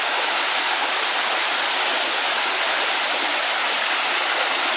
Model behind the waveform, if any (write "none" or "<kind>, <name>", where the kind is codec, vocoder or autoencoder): none